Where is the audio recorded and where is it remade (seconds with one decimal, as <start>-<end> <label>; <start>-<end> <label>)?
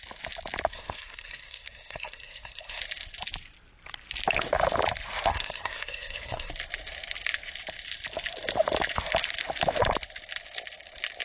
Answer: 0.0-0.7 recorded; 0.7-2.8 remade; 2.8-5.3 recorded; 5.3-6.5 remade; 6.5-11.2 recorded